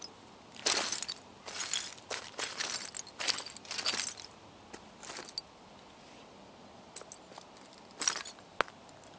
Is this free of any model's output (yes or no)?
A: yes